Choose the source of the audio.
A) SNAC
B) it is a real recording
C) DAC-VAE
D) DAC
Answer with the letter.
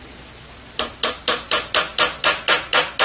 B